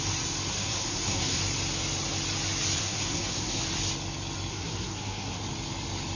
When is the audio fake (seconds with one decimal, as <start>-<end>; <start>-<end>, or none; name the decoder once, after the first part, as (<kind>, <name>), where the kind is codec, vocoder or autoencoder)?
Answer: 0.5-1.4 (codec, SNAC); 2.8-3.6; 4.5-5.4